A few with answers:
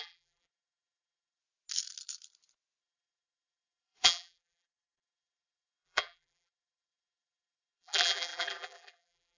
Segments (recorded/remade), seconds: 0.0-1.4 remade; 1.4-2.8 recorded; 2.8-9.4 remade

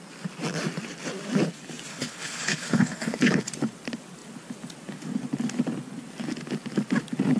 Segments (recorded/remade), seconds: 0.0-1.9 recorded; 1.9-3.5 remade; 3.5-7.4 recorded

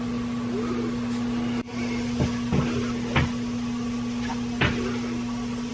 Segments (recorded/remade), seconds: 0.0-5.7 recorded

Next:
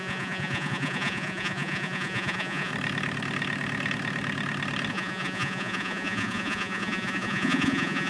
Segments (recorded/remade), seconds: 0.0-2.7 remade; 2.7-4.9 recorded; 4.9-8.1 remade

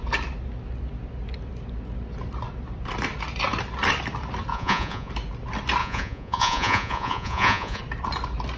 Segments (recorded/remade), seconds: 0.0-4.5 recorded; 4.5-5.1 remade; 5.1-5.8 recorded; 5.8-7.8 remade; 7.8-8.6 recorded

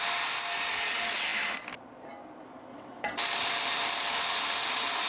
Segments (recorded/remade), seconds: 0.0-2.7 recorded; 2.7-3.2 remade; 3.2-5.1 recorded

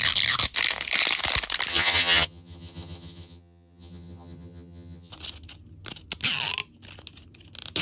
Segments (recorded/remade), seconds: 0.0-1.7 recorded; 1.7-5.1 remade; 5.1-7.8 recorded